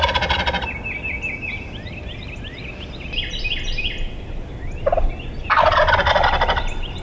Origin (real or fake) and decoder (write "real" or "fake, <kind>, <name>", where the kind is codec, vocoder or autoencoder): real